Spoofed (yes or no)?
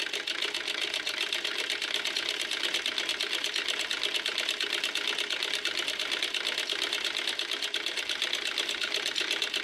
no